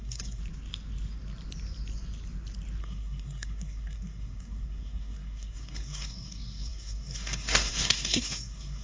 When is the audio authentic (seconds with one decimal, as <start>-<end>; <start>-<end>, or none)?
0.4-2.8